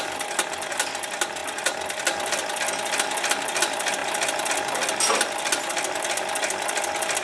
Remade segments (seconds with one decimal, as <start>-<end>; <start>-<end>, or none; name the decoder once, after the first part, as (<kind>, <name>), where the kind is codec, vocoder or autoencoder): none